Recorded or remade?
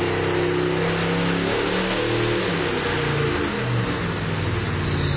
recorded